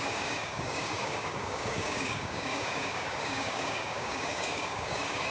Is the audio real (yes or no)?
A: no